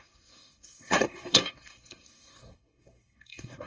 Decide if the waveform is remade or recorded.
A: remade